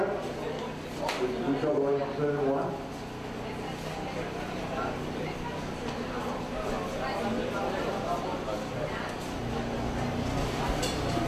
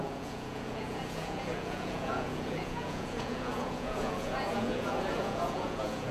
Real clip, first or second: first